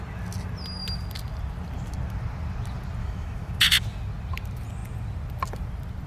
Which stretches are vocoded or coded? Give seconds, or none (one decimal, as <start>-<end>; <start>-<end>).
3.0-3.5